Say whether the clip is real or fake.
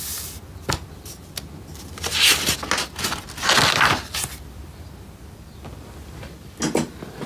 real